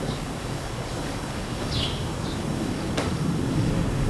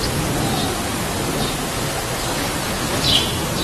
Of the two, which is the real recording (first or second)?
second